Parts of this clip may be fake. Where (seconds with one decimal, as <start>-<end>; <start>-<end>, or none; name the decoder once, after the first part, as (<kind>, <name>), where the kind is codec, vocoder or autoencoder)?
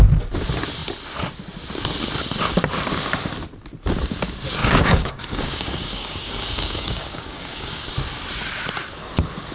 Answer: 4.6-7.9 (codec, DAC)